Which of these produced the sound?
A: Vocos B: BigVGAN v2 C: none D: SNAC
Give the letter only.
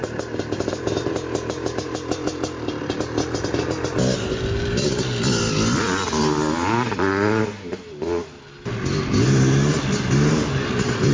C